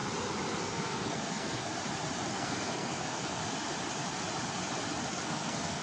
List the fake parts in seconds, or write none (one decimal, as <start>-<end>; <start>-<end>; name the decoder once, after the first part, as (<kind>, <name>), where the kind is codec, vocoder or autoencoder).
0.6-1.7 (codec, SNAC); 2.3-3.4; 5.1-5.8